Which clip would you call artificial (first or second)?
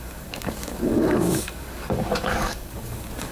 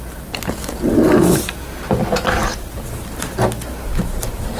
first